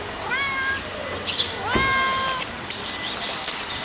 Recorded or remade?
recorded